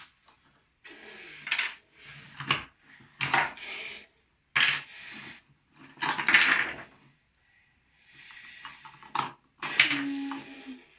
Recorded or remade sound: recorded